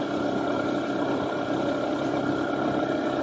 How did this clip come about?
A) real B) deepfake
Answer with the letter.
B